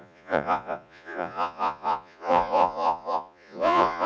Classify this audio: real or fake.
fake